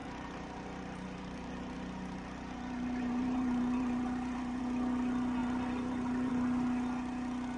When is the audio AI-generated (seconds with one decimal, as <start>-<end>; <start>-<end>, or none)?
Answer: 0.0-4.6; 5.4-6.3